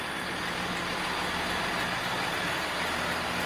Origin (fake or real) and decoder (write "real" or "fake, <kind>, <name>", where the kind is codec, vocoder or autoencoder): real